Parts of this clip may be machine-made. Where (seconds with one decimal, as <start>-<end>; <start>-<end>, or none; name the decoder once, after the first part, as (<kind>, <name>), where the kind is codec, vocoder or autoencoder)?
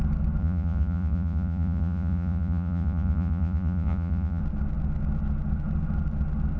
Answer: 0.4-4.4 (vocoder, Vocos)